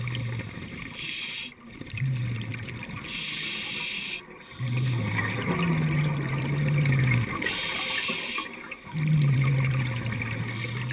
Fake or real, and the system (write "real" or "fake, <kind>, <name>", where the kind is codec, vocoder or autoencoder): real